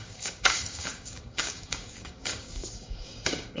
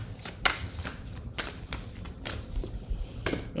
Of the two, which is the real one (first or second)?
second